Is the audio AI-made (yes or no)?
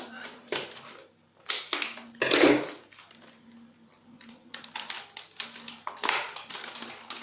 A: no